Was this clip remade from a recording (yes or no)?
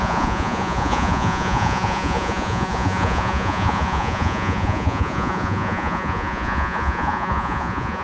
yes